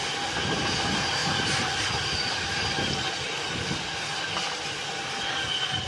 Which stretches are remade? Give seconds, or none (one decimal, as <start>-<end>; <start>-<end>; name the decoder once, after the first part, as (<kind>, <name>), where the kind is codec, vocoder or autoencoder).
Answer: 1.2-3.1 (vocoder, BigVGAN v2)